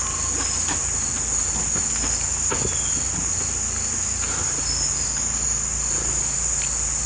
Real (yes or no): yes